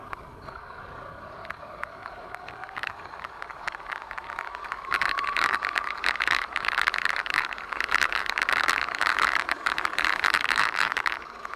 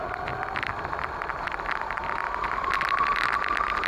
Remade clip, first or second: first